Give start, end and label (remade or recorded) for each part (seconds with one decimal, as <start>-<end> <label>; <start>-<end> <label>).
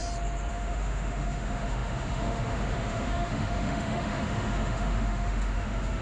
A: 0.0-0.5 recorded; 0.5-6.0 remade